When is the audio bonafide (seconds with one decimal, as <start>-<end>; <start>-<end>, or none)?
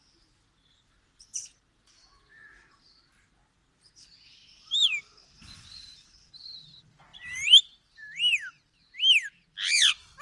0.0-4.4; 6.3-7.1; 8.2-10.2